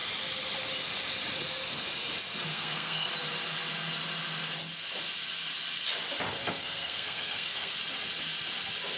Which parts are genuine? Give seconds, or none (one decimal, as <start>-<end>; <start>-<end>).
0.0-2.5; 3.1-6.4; 7.8-9.0